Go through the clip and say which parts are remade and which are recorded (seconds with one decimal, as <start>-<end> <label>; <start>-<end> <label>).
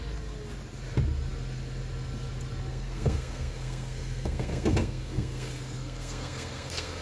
0.0-2.7 recorded; 2.7-7.0 remade